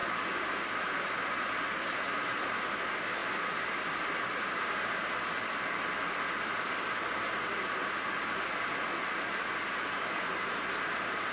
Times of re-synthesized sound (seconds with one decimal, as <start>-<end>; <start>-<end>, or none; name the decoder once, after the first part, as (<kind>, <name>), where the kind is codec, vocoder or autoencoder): 0.0-2.8 (vocoder, BigVGAN v2); 3.2-7.9